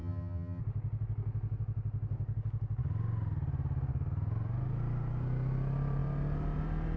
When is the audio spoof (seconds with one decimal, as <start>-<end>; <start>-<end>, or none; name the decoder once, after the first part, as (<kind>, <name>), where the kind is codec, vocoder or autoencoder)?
0.0-0.6 (vocoder, HiFi-GAN)